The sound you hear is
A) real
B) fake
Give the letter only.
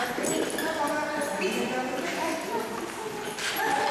A